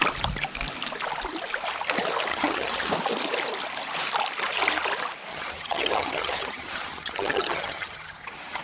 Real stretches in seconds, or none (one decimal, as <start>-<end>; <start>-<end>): 0.0-2.3; 2.9-5.3